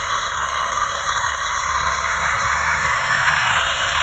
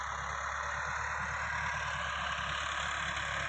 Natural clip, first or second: second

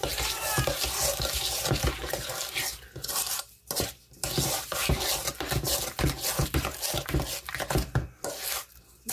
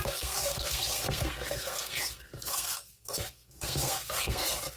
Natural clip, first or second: first